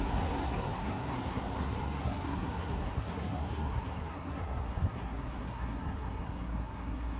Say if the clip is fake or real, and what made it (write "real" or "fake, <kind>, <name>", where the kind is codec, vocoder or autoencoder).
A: fake, codec, SNAC